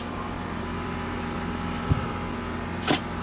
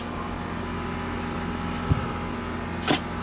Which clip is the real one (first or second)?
second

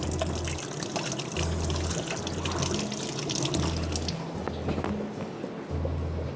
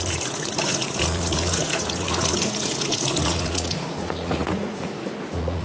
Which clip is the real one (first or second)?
first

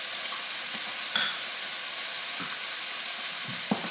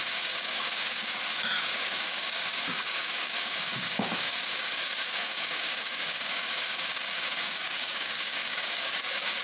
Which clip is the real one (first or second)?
first